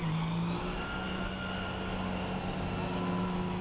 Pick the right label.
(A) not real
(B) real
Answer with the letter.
B